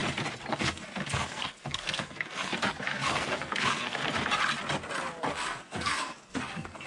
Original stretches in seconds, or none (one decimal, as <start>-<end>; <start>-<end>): 0.0-0.5; 4.0-5.3